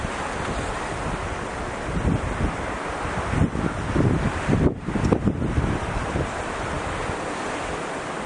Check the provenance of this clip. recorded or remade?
recorded